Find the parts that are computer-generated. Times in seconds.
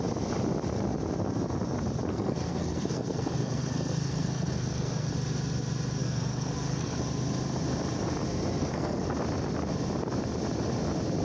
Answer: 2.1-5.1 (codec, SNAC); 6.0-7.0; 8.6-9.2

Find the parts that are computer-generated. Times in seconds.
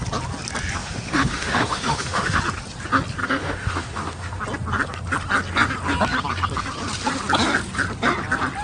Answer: 0.8-2.4 (autoencoder, DAC-VAE); 3.2-4.4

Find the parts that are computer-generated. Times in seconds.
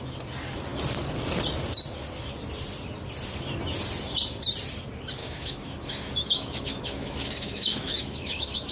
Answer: 5.2-8.7 (autoencoder, DAC-VAE)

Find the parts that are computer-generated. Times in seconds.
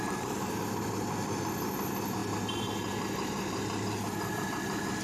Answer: none